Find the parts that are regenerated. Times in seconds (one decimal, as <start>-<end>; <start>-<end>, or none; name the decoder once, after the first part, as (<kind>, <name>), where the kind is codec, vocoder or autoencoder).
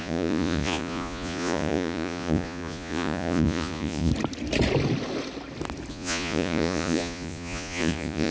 0.0-4.1 (vocoder, Vocos); 5.9-8.3